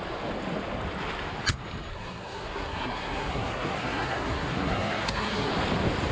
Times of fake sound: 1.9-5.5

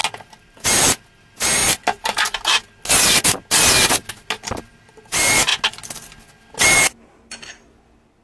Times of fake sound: none

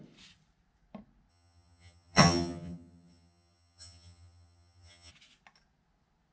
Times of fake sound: 1.3-5.1